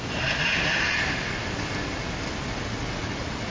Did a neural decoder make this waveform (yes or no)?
no